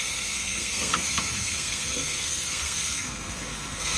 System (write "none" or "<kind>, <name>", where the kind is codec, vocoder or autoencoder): codec, SNAC